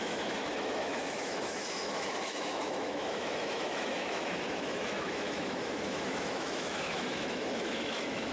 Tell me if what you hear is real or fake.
fake